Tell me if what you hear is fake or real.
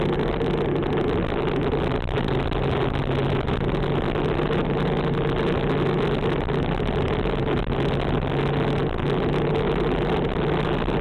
real